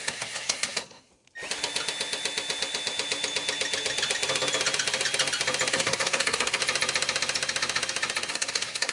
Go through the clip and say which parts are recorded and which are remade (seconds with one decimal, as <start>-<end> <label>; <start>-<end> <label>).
0.0-1.1 remade; 1.1-5.7 recorded; 5.7-6.6 remade; 6.6-8.3 recorded; 8.3-8.9 remade